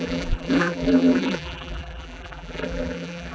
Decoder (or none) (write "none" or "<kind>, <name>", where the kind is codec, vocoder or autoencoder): vocoder, BigVGAN v2